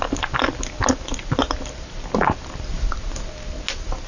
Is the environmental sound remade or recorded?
recorded